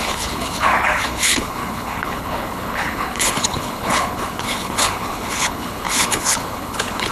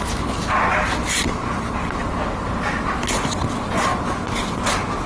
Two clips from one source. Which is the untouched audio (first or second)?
second